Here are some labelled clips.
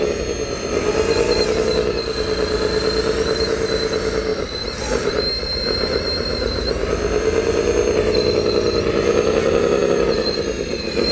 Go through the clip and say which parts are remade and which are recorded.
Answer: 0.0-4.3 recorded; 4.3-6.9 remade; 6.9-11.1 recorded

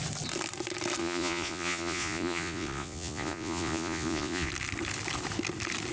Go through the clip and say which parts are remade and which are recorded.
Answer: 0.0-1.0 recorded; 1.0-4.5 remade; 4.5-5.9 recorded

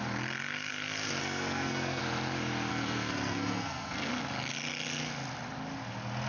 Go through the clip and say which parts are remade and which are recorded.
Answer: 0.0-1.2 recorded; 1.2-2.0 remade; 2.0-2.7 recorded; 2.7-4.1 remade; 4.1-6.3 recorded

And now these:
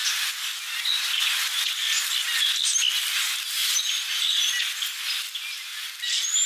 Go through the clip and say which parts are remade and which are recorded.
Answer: 0.0-6.5 recorded

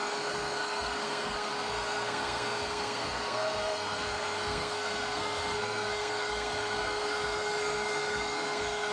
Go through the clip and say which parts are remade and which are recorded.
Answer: 0.0-8.9 remade

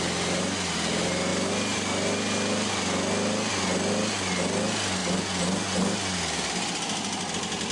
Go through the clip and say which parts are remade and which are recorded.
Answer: 0.0-7.7 recorded